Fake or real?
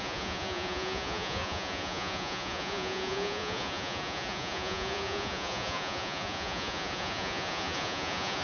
fake